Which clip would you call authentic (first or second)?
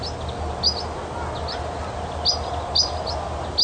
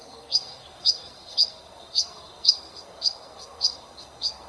first